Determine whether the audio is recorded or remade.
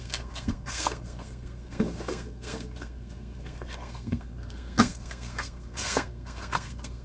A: remade